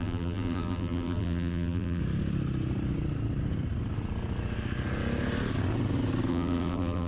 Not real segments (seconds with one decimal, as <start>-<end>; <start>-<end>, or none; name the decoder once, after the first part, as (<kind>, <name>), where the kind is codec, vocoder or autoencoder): 0.0-2.0 (vocoder, BigVGAN v2); 6.3-7.1